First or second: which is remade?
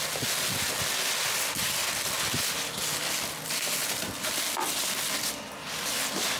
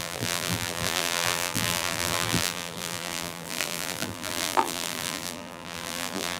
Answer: second